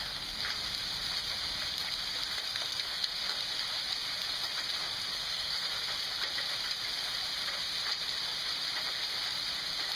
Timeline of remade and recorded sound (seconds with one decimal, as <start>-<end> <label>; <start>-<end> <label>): 0.0-2.5 recorded; 2.5-3.2 remade; 3.2-5.1 recorded; 5.1-5.7 remade; 5.7-10.0 recorded